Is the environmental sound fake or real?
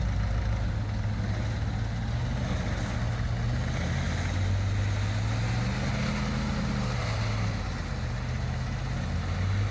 real